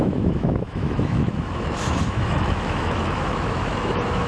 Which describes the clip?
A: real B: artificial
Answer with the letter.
B